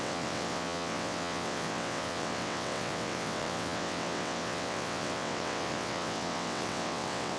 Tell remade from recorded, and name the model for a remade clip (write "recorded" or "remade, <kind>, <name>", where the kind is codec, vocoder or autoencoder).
remade, vocoder, WaveNeXt